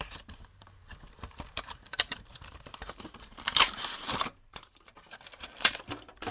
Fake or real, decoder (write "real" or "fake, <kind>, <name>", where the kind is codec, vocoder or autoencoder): fake, vocoder, BigVGAN v2